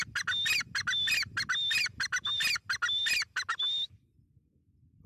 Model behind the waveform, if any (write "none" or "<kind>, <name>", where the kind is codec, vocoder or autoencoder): none